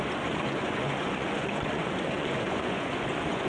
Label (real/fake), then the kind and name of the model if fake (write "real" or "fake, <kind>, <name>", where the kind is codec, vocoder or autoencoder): fake, vocoder, Vocos